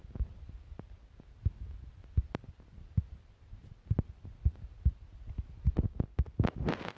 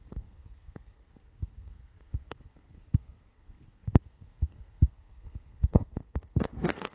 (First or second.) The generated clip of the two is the second